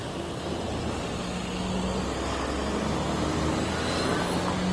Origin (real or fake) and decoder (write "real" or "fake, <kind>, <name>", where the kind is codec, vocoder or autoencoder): real